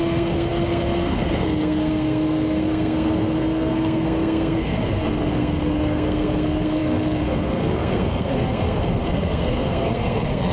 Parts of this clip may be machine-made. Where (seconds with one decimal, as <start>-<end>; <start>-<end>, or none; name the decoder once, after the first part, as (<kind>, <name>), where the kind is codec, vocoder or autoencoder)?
0.0-10.5 (codec, SNAC)